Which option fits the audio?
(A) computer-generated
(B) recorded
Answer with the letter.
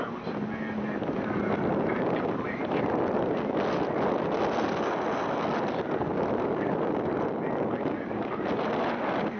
B